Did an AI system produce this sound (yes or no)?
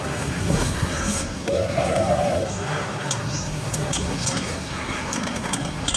yes